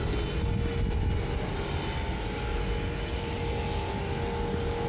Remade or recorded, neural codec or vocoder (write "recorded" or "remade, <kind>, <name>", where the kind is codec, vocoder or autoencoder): recorded